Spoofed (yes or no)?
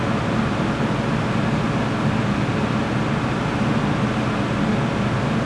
no